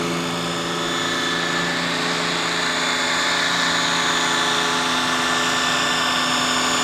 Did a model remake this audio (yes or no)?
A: no